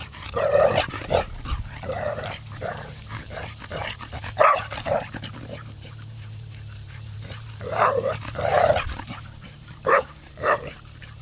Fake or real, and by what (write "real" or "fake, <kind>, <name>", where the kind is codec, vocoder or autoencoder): fake, vocoder, BigVGAN v2